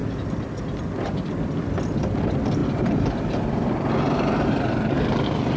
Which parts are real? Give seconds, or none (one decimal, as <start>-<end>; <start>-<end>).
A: 1.7-2.6